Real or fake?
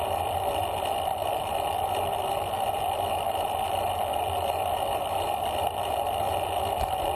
real